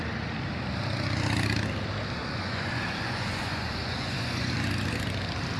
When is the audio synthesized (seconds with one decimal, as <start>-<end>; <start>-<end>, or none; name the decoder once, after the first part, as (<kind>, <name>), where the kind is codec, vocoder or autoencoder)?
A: 2.2-4.5 (vocoder, Vocos)